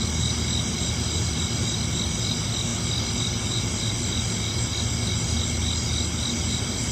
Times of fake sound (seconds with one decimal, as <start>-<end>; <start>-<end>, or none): none